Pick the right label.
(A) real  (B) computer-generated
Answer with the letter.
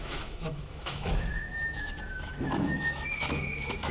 B